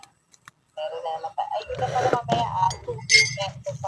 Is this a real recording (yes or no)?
yes